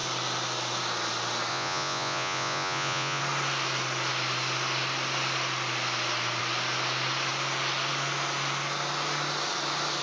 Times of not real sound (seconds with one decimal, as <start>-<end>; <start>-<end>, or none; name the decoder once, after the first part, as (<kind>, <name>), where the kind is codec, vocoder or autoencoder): 1.5-3.2 (vocoder, Vocos)